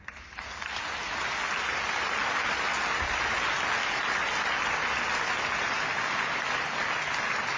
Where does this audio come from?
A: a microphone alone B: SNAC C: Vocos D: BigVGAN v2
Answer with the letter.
A